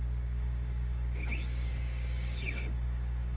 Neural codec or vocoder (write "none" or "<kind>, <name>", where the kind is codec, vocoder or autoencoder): codec, DAC